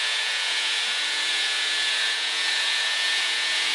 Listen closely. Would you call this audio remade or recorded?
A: remade